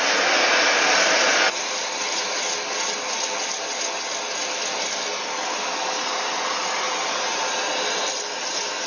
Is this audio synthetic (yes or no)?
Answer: no